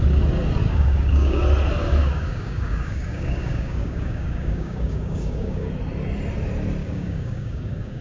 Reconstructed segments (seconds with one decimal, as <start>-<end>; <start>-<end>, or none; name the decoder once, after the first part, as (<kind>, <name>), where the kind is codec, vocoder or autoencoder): 0.6-1.4 (codec, DAC); 2.0-5.7; 6.8-8.0